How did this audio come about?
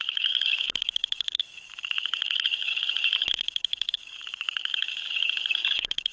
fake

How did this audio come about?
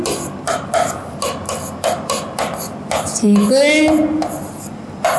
real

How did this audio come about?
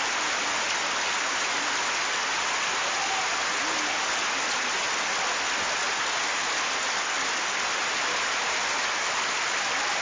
real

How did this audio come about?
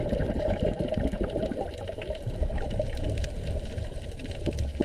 fake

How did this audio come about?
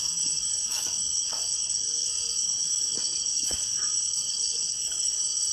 fake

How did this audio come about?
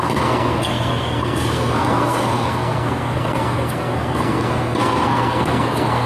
fake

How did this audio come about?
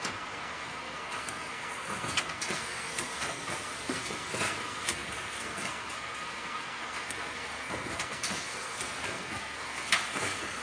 fake